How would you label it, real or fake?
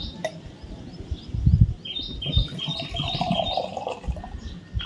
real